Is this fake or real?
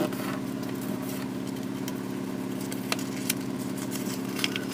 real